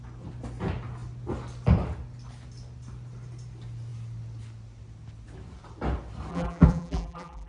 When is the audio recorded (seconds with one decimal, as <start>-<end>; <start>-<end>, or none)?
0.0-6.3